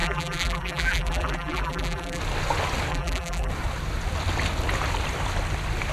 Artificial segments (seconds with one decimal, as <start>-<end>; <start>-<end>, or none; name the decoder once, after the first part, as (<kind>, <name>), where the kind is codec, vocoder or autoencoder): 0.0-2.2 (vocoder, BigVGAN v2); 2.9-3.5

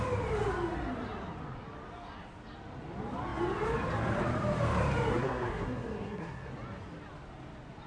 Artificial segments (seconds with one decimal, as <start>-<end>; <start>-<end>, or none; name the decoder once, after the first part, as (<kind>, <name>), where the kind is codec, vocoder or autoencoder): 5.1-6.5 (codec, SNAC)

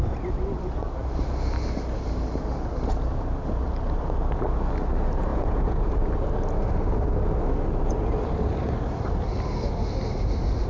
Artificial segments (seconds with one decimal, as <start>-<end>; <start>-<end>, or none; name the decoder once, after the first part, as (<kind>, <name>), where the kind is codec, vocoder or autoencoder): 5.3-6.0 (vocoder, Vocos)

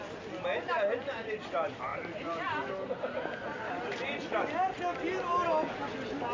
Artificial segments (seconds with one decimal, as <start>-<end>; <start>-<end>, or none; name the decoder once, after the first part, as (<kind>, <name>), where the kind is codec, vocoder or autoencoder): none